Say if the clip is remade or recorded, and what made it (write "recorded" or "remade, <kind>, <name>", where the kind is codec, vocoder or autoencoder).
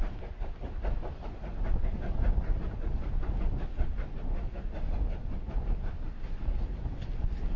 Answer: recorded